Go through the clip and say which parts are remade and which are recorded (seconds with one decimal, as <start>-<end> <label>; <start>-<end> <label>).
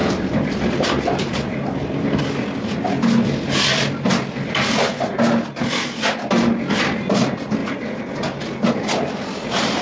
0.0-2.2 remade; 2.2-9.8 recorded